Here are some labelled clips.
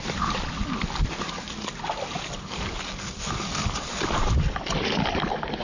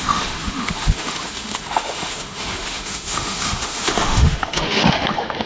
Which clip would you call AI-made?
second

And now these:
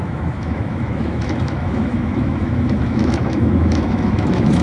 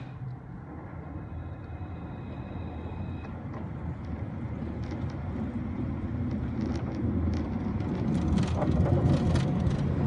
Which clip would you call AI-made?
first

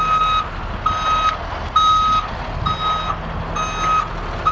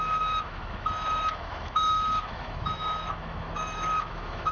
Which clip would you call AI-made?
second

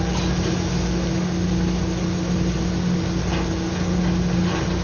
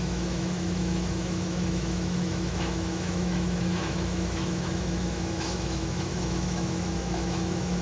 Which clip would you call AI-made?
second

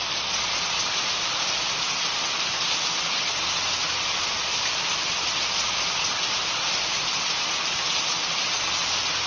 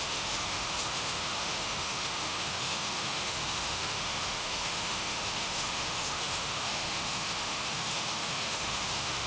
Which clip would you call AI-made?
second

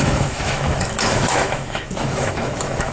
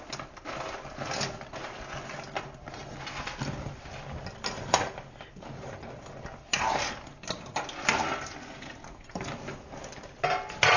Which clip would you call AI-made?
first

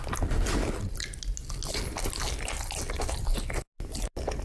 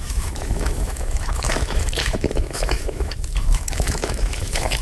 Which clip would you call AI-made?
second